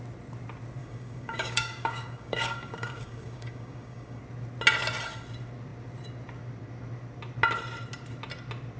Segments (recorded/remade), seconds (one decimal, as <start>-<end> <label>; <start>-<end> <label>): 0.0-0.8 recorded; 0.8-4.2 remade; 4.2-8.8 recorded